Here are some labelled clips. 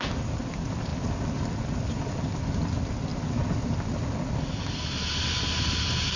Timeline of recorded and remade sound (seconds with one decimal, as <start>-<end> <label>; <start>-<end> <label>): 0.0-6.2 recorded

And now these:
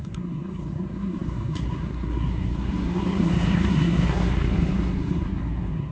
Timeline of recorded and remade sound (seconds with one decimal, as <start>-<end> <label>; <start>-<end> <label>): 0.0-5.9 remade

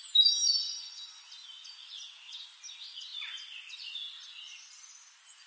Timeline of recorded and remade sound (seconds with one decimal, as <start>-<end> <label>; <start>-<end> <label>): 0.0-5.5 recorded

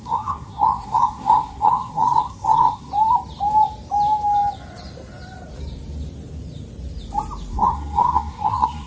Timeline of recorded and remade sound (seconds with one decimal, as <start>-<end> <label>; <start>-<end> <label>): 0.0-2.9 remade; 2.9-7.5 recorded; 7.5-8.9 remade

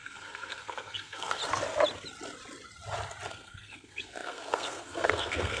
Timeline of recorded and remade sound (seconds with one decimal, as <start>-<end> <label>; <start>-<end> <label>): 0.0-1.4 remade; 1.4-3.3 recorded; 3.3-5.6 remade

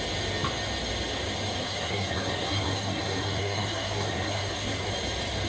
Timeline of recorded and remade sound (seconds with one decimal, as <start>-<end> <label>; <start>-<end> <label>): 0.0-1.6 recorded; 1.6-4.9 remade; 4.9-5.5 recorded